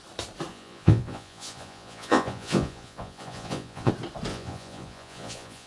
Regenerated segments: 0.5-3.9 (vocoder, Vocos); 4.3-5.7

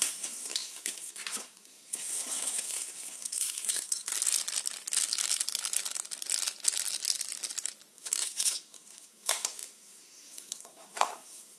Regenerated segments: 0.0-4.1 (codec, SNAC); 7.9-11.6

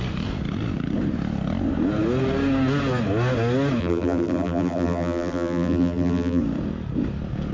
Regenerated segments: 3.8-6.4 (vocoder, BigVGAN v2)

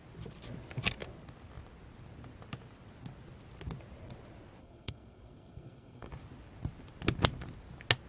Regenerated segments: 4.6-6.1 (codec, SNAC)

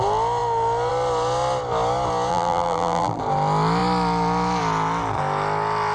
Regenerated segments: 2.3-3.2 (vocoder, BigVGAN v2)

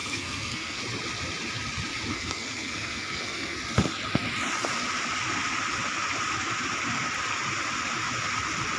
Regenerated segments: 0.0-0.8 (codec, SNAC); 2.1-3.6

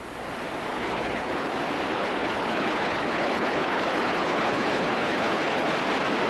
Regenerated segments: 0.7-1.5 (codec, HILCodec); 1.9-5.7

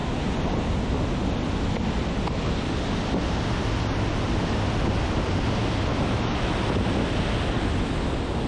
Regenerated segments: 5.9-6.5 (autoencoder, DAC-VAE)